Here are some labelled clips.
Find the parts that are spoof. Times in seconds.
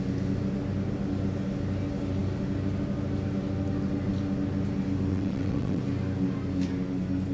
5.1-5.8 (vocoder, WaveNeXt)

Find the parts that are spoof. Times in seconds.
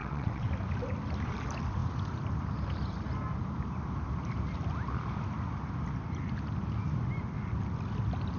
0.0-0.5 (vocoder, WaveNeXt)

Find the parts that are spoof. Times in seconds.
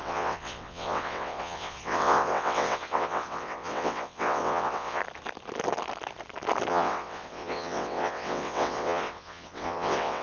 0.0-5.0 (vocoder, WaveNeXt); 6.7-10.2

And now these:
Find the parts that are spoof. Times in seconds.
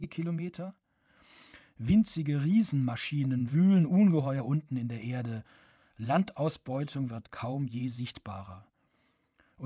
0.0-0.7 (vocoder, WaveNeXt); 3.4-4.4; 5.8-8.7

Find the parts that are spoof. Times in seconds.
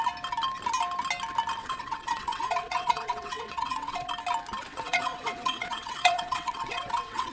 1.6-4.1 (vocoder, WaveNeXt); 4.7-7.3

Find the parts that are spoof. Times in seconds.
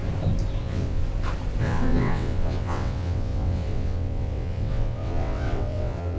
0.6-1.0 (vocoder, WaveNeXt); 1.6-6.2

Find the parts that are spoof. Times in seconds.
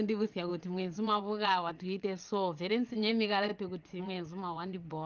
0.0-3.5 (vocoder, WaveNeXt); 4.0-5.1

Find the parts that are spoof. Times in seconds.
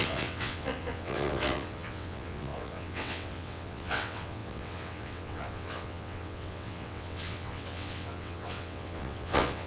0.0-9.7 (vocoder, WaveNeXt)